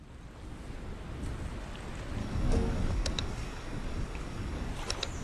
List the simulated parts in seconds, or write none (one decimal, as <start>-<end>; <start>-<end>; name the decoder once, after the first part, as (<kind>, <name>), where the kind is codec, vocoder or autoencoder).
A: 2.2-4.7 (codec, DAC)